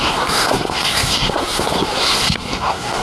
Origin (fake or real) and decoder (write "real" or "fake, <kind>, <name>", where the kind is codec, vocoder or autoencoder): fake, codec, SNAC